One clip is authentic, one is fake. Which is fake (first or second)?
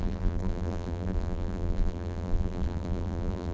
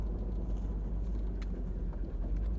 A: first